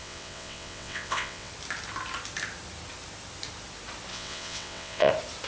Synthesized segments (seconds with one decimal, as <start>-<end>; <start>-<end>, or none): 0.0-1.5; 4.1-5.1